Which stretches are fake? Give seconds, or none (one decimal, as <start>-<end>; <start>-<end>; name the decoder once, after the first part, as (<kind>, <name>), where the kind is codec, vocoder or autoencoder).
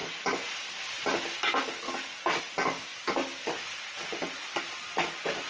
none